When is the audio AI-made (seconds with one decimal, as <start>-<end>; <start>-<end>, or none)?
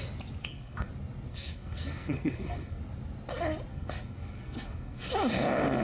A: 0.4-0.9; 1.3-2.8; 3.7-5.1